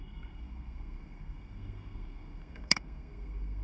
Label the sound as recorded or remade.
remade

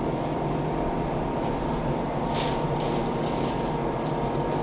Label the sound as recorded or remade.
recorded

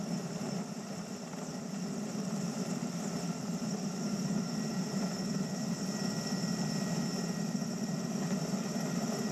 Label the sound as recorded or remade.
recorded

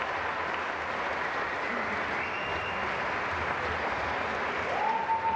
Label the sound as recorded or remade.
recorded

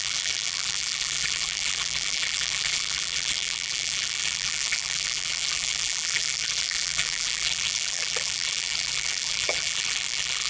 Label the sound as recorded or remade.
remade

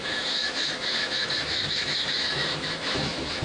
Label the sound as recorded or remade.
remade